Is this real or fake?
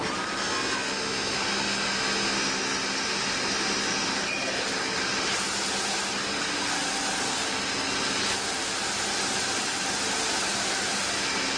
real